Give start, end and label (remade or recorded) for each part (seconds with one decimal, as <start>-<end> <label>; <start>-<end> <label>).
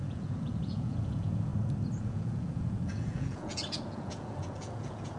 0.0-1.5 remade; 1.5-2.0 recorded; 2.0-5.2 remade